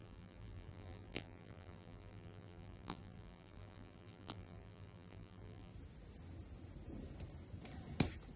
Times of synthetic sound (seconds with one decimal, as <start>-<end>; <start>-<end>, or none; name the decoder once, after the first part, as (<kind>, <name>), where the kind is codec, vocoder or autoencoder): 0.0-5.7 (vocoder, BigVGAN v2)